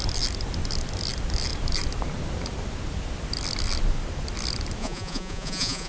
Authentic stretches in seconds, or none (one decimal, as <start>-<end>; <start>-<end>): 0.0-4.8